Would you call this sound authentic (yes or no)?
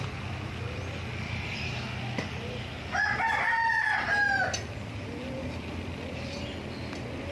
yes